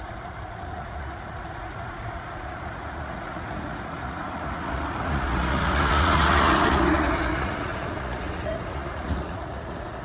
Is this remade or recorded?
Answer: remade